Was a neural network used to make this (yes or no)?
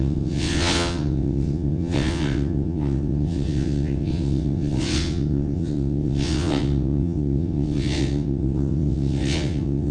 yes